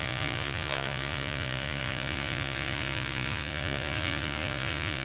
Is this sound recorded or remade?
remade